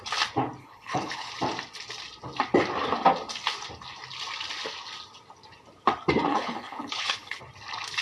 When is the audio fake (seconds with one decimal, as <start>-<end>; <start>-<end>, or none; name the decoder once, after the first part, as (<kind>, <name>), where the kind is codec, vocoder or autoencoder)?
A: 0.6-1.3 (codec, HILCodec); 6.3-7.4